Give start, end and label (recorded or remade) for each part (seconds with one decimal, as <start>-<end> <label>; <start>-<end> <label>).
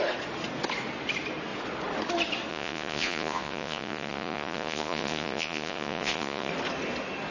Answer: 0.0-2.5 recorded; 2.5-6.5 remade; 6.5-7.3 recorded